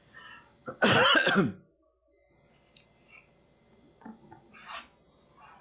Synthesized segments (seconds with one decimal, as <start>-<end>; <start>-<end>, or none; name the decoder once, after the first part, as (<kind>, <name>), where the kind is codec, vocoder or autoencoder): none